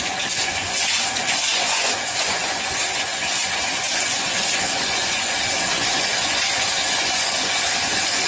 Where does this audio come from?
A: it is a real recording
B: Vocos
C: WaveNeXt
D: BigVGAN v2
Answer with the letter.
B